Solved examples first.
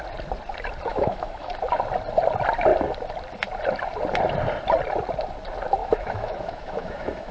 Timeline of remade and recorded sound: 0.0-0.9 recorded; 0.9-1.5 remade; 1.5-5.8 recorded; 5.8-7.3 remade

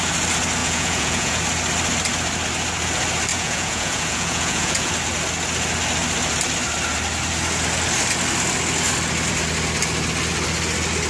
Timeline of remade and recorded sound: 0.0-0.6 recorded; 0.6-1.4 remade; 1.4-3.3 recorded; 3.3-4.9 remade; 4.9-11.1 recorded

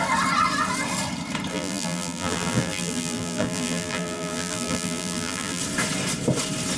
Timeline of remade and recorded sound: 0.0-1.5 recorded; 1.5-5.6 remade; 5.6-6.8 recorded

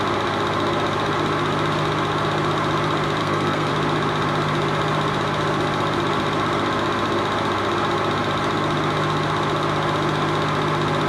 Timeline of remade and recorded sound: 0.0-3.2 recorded; 3.2-3.7 remade; 3.7-11.1 recorded

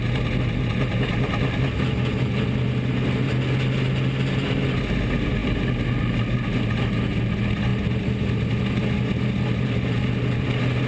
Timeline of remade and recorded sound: 0.0-10.9 recorded